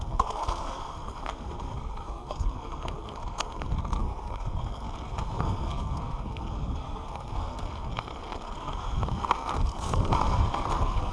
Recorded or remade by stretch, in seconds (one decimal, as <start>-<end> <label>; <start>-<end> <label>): 0.0-11.1 remade